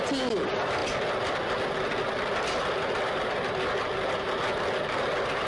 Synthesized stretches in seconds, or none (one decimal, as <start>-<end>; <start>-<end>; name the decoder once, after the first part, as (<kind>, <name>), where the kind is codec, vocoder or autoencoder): none